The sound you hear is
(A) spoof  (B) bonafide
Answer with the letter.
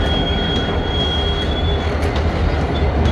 B